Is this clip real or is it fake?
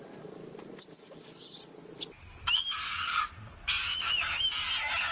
real